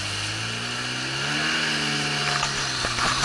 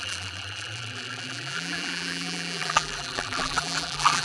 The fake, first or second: second